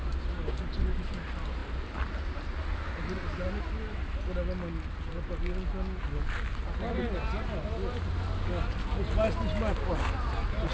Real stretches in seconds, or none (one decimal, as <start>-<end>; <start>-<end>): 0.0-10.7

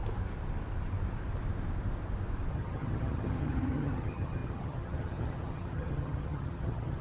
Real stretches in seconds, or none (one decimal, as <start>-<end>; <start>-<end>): 0.0-2.5

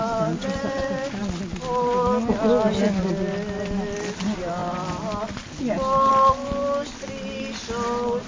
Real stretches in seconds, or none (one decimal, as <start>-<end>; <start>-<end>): 0.0-8.3

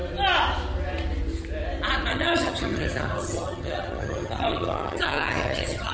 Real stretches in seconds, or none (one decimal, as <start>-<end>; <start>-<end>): 0.0-2.1